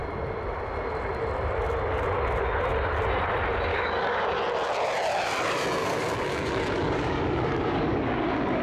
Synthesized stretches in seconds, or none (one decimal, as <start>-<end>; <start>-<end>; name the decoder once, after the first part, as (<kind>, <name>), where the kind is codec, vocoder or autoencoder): 3.7-4.2 (codec, DAC); 5.8-8.6